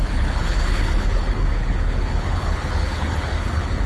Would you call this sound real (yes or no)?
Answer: no